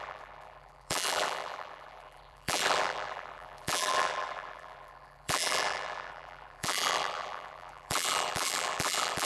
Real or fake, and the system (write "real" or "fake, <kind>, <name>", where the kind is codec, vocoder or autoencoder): fake, vocoder, BigVGAN v2